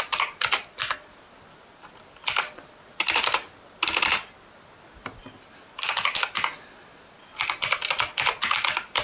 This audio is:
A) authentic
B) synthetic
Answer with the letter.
A